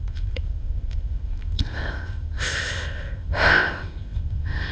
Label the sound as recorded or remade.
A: remade